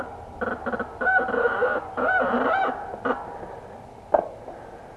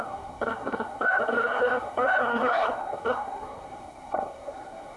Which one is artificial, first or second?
second